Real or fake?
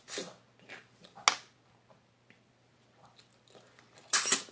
real